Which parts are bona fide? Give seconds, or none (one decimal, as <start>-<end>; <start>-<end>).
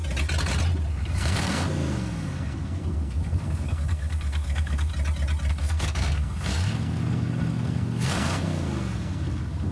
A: 0.0-0.9; 4.9-5.5